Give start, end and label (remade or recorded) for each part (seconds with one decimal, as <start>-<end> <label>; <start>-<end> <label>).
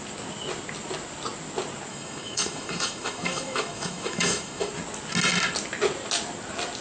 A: 0.0-1.9 recorded; 1.9-4.7 remade; 4.7-6.8 recorded